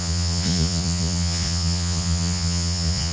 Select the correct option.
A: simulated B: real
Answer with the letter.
A